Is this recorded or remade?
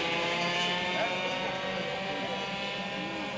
recorded